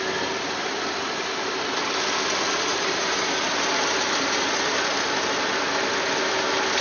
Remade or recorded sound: recorded